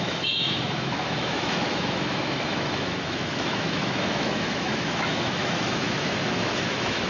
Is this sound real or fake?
fake